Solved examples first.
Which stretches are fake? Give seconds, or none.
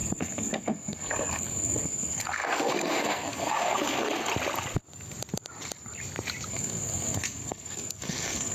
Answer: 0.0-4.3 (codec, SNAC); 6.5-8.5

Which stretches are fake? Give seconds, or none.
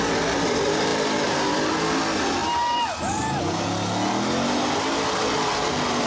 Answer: none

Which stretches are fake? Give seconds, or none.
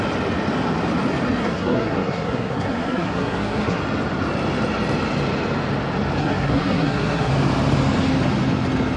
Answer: 1.4-3.8 (codec, SNAC); 6.2-7.3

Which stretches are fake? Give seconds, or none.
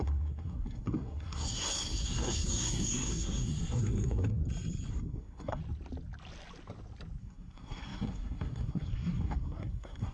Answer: 0.0-4.4 (codec, SNAC); 4.9-5.6; 7.2-10.1